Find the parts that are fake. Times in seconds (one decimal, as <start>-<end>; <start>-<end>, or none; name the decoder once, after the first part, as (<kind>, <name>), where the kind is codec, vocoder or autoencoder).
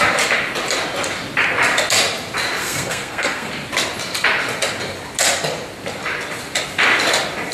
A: 2.6-3.5 (codec, SNAC)